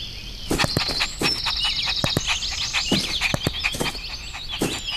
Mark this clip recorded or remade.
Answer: recorded